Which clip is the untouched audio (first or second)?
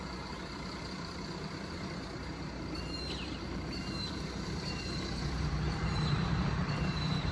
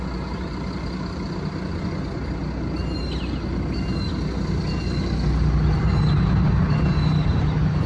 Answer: second